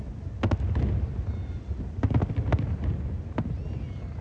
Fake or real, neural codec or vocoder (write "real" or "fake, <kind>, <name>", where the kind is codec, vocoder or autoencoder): real